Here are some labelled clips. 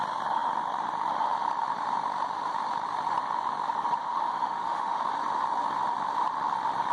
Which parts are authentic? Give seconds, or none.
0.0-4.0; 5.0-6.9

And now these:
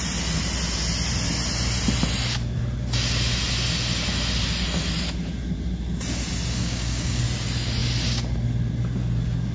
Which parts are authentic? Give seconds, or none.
0.0-6.6; 7.2-9.5